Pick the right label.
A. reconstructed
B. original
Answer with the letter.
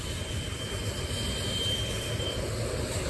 A